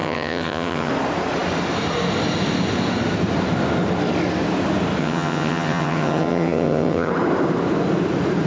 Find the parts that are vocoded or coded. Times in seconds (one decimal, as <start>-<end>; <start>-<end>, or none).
0.0-0.9; 5.0-7.1